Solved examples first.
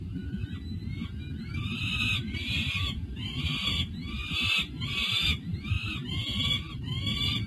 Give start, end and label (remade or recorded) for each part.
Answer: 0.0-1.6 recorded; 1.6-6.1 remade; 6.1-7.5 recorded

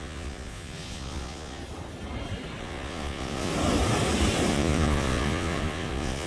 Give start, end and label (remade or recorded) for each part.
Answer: 0.0-1.6 remade; 1.6-2.6 recorded; 2.6-3.5 remade; 3.5-4.5 recorded; 4.5-6.3 remade

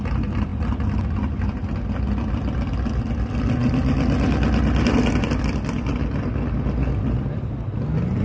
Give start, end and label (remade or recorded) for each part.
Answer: 0.0-8.2 recorded

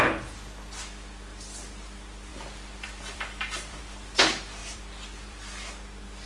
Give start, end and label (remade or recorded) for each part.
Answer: 0.0-2.3 recorded; 2.3-3.8 remade; 3.8-4.6 recorded; 4.6-5.7 remade; 5.7-6.3 recorded

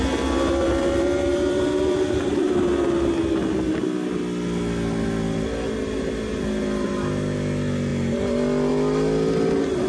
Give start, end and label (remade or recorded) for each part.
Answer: 0.0-0.6 recorded; 0.6-2.6 remade; 2.6-9.9 recorded

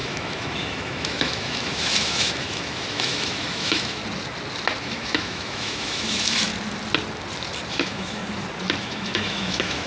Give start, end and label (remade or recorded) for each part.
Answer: 0.0-4.0 remade; 4.0-4.8 recorded; 4.8-6.5 remade; 6.5-7.7 recorded; 7.7-8.2 remade; 8.2-8.8 recorded; 8.8-9.9 remade

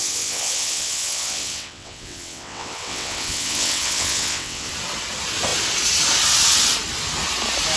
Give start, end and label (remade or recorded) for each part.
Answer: 0.0-4.7 remade; 4.7-7.8 recorded